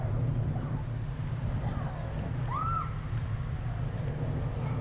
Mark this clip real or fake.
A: real